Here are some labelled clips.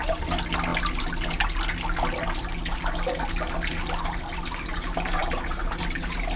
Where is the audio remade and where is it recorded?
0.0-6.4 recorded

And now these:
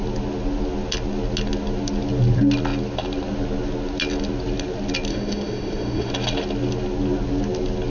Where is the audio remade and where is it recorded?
0.0-5.1 recorded; 5.1-6.1 remade; 6.1-7.9 recorded

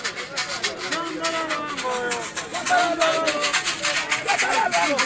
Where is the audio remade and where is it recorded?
0.0-5.0 recorded

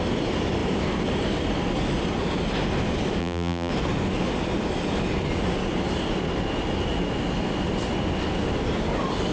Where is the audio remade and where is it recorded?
0.0-3.2 recorded; 3.2-3.7 remade; 3.7-9.3 recorded

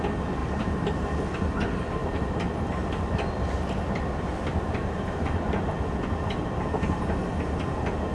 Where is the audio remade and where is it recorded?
0.0-0.4 recorded; 0.4-1.2 remade; 1.2-2.0 recorded; 2.0-3.8 remade; 3.8-4.5 recorded; 4.5-5.6 remade; 5.6-8.1 recorded